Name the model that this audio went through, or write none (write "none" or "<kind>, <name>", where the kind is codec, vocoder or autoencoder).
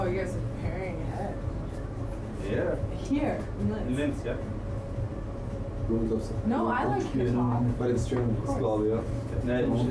none